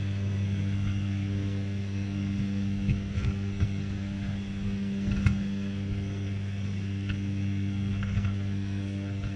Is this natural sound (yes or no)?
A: no